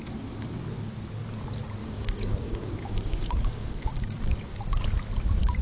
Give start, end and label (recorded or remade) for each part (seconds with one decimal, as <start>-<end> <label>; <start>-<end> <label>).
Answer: 0.0-1.8 recorded; 1.8-4.6 remade; 4.6-5.6 recorded